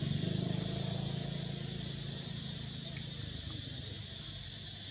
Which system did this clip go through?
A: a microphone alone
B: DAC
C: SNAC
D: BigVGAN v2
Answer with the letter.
A